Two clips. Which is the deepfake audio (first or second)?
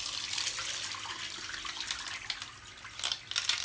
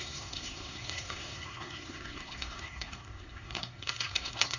second